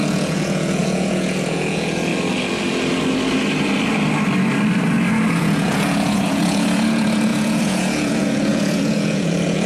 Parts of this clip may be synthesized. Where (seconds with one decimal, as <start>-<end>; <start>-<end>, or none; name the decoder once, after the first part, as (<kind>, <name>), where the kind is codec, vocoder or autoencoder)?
0.0-2.1 (vocoder, Vocos); 5.4-9.7